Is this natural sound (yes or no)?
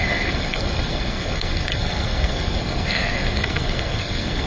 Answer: no